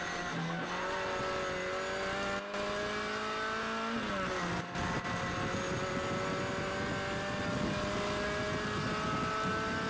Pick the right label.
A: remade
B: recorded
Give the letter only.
B